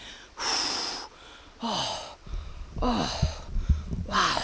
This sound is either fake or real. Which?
real